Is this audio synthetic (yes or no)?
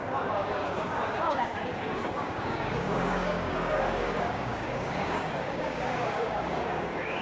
yes